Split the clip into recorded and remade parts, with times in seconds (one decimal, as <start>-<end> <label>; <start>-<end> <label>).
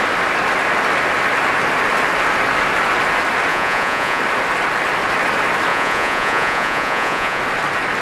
0.0-3.5 recorded; 3.5-4.2 remade; 4.2-5.7 recorded; 5.7-7.4 remade; 7.4-8.0 recorded